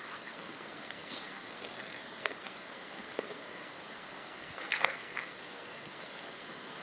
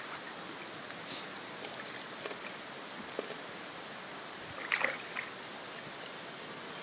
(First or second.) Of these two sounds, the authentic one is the second